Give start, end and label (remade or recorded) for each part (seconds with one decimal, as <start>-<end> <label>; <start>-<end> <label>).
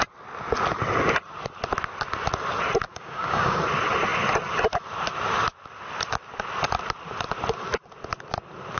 0.0-2.9 recorded; 2.9-3.6 remade; 3.6-8.8 recorded